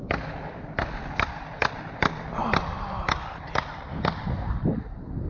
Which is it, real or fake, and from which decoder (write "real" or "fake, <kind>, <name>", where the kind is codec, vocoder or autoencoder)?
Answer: real